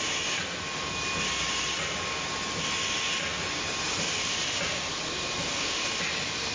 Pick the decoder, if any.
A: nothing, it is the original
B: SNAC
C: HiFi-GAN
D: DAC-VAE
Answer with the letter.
A